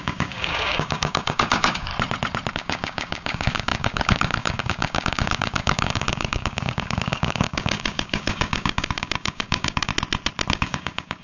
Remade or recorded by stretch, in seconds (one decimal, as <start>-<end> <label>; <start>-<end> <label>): 0.0-1.9 remade; 1.9-2.5 recorded; 2.5-9.9 remade; 9.9-10.5 recorded; 10.5-11.2 remade